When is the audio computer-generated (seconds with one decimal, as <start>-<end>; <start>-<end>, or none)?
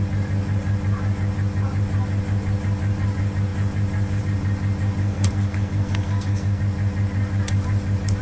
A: 5.0-6.6